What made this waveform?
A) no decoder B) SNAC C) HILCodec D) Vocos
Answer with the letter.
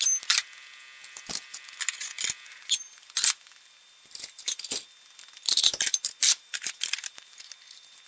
A